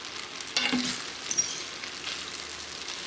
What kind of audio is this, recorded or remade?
recorded